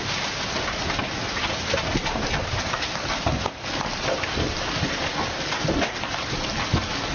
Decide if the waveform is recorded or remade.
recorded